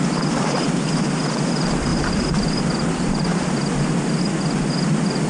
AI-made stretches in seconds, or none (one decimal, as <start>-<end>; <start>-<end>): 1.9-2.6; 3.3-4.0